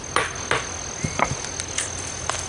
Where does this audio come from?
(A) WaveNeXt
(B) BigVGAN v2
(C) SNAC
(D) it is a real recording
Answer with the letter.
D